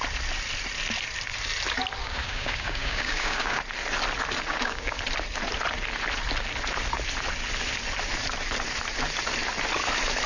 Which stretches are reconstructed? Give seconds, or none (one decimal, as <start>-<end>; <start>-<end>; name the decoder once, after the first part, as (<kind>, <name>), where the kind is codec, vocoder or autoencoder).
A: 2.0-3.6 (codec, DAC); 4.5-5.0